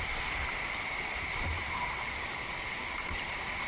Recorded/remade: recorded